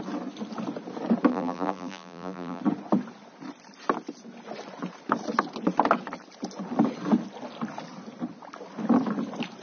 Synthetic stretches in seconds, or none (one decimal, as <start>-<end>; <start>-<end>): 1.3-2.6